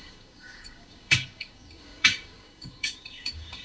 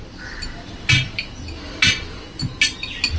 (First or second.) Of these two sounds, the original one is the second